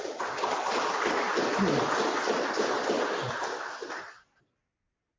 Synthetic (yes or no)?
no